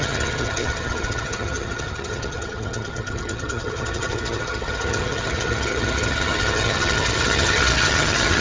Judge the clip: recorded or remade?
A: remade